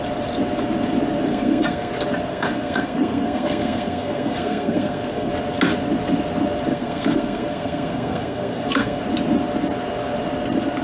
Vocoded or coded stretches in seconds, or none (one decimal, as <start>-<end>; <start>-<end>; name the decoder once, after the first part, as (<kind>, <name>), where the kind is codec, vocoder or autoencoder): 1.3-1.9 (codec, SNAC); 2.3-5.3; 6.7-9.0